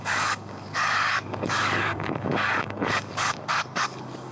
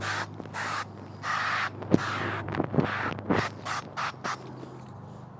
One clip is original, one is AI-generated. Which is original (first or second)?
second